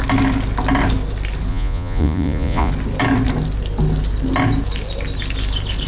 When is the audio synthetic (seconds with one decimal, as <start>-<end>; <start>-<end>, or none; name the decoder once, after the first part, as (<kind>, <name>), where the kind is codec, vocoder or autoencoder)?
1.5-2.7 (vocoder, Vocos)